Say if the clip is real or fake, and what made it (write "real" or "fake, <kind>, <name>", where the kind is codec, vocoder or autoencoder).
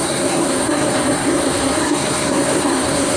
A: fake, codec, SNAC